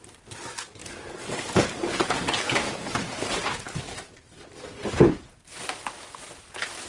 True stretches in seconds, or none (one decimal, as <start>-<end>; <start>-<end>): 0.0-0.8; 3.0-6.9